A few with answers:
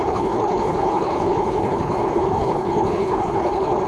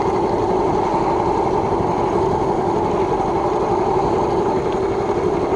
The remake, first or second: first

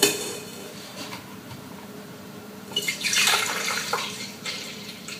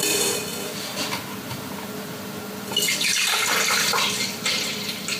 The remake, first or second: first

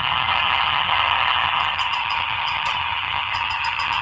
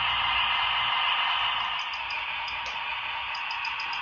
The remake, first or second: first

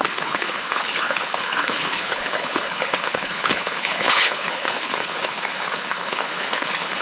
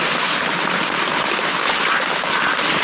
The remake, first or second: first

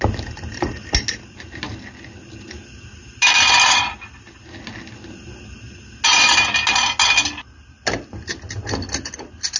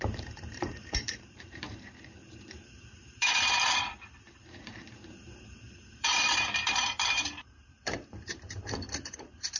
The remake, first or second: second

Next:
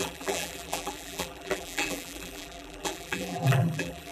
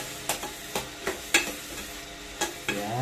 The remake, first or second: first